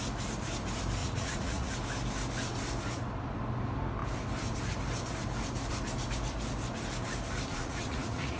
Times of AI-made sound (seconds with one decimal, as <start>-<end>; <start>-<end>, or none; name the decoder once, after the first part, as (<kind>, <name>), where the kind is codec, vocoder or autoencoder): 1.0-1.7 (vocoder, Vocos); 7.5-8.4